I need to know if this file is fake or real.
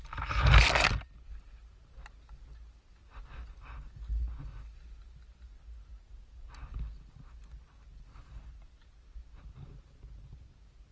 real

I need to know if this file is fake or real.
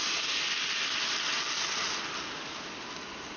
real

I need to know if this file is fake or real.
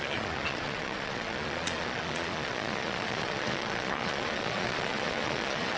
fake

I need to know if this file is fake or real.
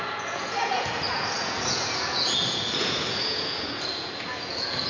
fake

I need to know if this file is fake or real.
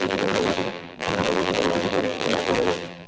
fake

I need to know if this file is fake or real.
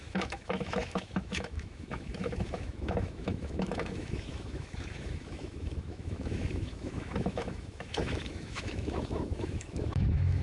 fake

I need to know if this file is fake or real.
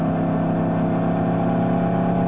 real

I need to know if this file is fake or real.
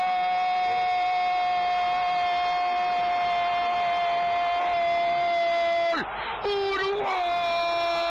real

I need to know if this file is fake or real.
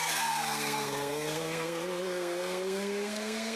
fake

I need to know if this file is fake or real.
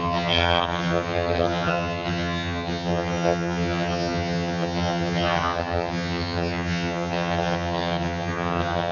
fake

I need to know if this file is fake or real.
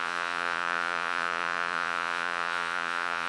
fake